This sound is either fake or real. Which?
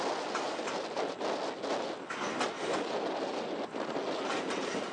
real